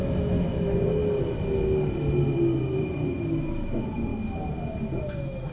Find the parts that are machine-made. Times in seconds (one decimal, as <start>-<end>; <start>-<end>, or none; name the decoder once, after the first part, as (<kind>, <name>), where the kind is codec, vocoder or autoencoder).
0.0-1.0 (autoencoder, DAC-VAE); 2.8-4.1; 5.0-5.5